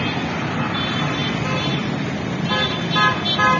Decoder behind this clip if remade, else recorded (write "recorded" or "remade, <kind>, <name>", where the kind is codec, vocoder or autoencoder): recorded